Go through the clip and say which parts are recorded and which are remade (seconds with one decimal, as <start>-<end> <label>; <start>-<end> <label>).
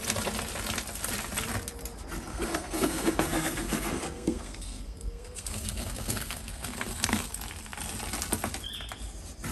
0.0-2.3 recorded; 2.3-7.3 remade; 7.3-9.5 recorded